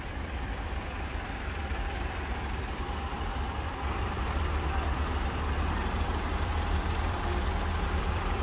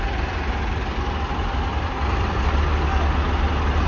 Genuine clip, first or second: second